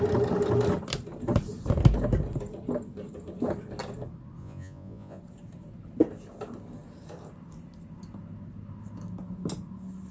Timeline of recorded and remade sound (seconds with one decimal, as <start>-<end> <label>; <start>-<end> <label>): 0.0-4.4 recorded; 4.4-5.2 remade; 5.2-10.1 recorded